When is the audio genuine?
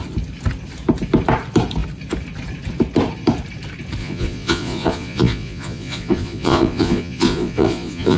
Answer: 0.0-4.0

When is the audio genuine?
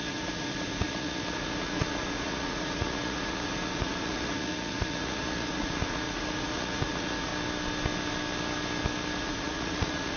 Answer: 7.3-9.2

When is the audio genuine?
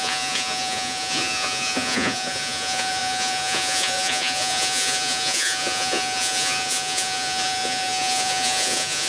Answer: none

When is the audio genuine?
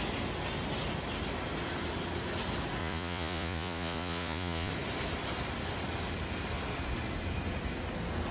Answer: 0.0-2.8; 4.7-8.3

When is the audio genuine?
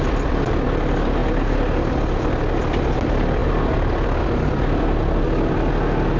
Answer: 0.0-6.2